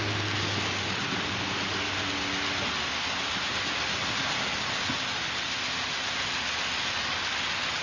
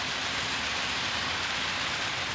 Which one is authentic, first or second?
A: first